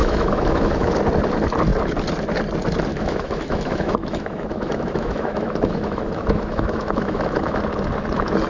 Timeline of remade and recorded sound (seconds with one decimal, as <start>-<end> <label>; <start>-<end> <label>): 0.0-0.9 remade; 0.9-2.9 recorded; 2.9-7.6 remade; 7.6-8.5 recorded